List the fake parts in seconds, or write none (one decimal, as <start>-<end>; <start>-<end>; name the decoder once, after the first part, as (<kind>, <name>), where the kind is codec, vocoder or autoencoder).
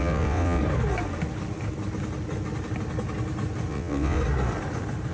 0.0-0.6 (vocoder, WaveNeXt); 3.7-4.2